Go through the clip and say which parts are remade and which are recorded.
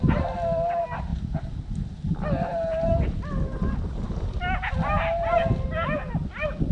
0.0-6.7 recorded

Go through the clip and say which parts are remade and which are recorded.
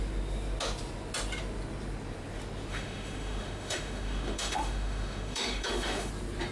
0.0-2.7 recorded; 2.7-6.1 remade; 6.1-6.5 recorded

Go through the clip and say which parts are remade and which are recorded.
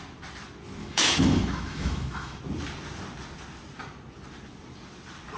0.0-0.8 recorded; 0.8-2.4 remade; 2.4-5.4 recorded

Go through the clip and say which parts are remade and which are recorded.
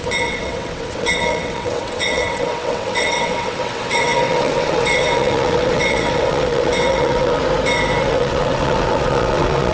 0.0-7.4 remade; 7.4-8.0 recorded; 8.0-9.7 remade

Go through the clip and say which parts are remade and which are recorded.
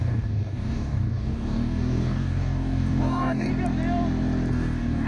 0.0-3.5 remade; 3.5-4.5 recorded; 4.5-5.1 remade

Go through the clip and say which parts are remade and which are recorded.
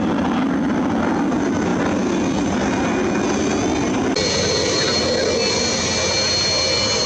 0.0-7.1 recorded